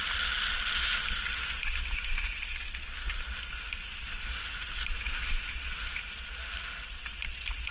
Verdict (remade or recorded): recorded